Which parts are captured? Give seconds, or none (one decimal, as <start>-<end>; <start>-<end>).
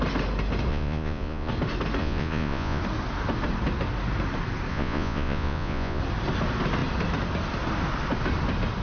0.0-0.7; 1.5-2.0; 2.8-4.7; 6.0-8.8